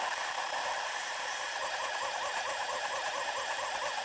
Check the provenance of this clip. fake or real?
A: real